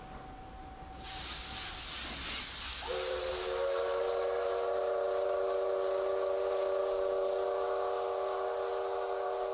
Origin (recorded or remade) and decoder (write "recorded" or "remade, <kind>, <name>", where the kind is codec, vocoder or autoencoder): recorded